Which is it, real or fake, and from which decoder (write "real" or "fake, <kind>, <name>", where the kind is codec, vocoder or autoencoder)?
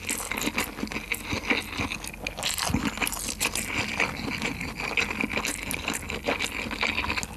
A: real